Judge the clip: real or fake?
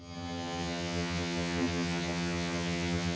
fake